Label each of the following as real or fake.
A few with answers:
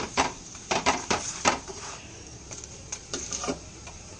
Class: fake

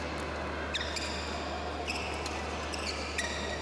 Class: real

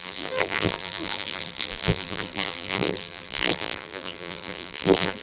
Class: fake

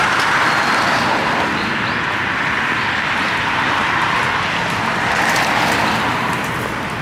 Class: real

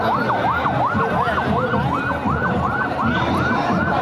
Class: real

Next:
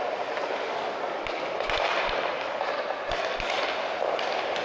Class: real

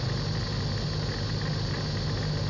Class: real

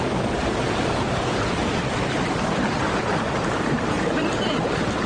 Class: fake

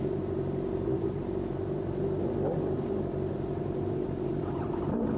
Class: fake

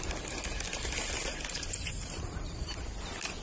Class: real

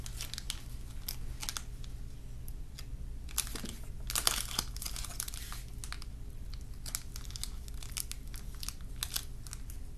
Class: real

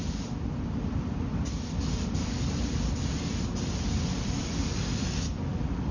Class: fake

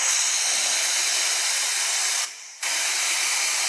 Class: real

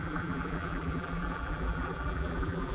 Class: fake